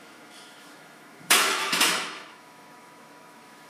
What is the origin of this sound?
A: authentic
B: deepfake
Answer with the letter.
B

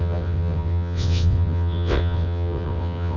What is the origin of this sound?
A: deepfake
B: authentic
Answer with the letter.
A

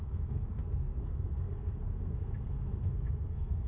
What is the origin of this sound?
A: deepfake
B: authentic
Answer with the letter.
A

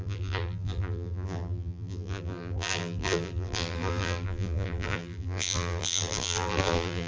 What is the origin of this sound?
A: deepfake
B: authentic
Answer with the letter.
A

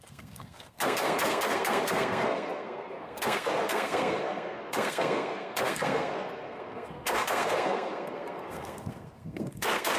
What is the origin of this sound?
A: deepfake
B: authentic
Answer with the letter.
A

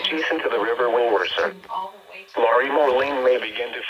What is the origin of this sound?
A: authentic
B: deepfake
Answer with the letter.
B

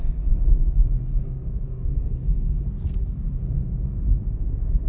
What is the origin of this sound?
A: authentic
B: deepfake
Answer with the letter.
B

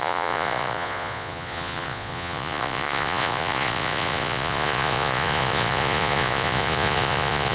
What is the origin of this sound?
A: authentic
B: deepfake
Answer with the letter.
B